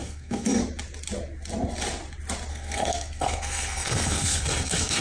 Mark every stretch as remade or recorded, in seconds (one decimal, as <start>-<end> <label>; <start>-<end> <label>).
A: 0.0-0.6 remade; 0.6-2.5 recorded; 2.5-5.0 remade